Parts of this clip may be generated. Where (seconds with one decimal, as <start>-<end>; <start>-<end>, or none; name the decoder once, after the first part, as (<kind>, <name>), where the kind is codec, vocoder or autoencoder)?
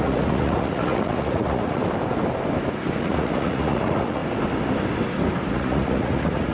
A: 0.0-1.8 (vocoder, Vocos); 3.0-4.2; 5.5-6.5